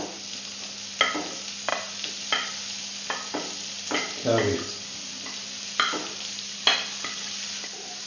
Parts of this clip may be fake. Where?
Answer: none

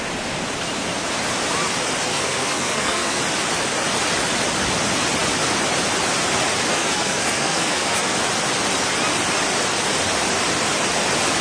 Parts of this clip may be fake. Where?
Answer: 2.1-3.2 (codec, SNAC); 6.7-8.2

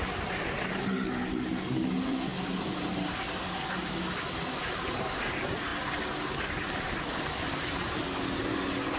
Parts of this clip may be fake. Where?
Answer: none

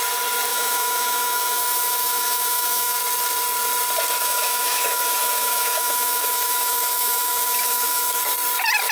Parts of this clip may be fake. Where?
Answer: 0.5-3.0 (autoencoder, DAC-VAE); 4.2-8.2